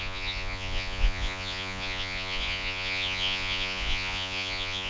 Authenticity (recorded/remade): remade